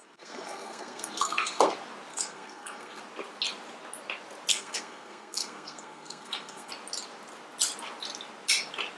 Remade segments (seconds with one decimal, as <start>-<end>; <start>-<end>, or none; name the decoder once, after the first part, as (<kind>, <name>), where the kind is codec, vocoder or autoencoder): 0.0-1.7 (codec, SNAC); 2.1-3.0; 4.5-6.7